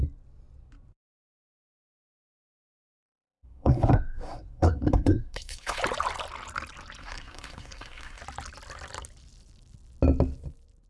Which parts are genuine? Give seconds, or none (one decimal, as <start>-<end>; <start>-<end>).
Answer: 0.0-3.0; 5.8-7.0; 8.2-10.9